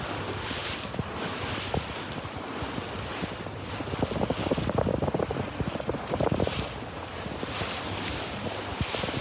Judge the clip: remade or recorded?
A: recorded